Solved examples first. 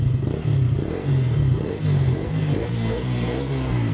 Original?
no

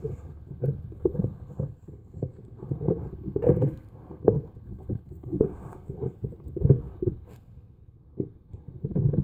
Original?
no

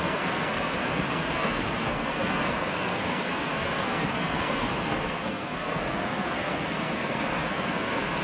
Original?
no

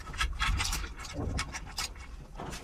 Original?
yes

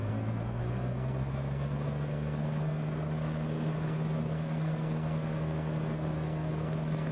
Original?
no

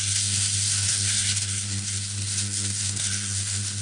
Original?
no